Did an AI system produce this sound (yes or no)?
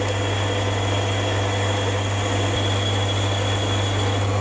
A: no